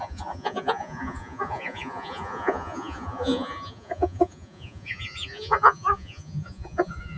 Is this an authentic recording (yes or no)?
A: no